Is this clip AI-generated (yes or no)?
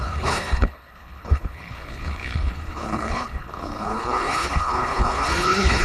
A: yes